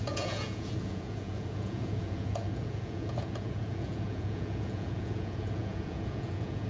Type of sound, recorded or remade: remade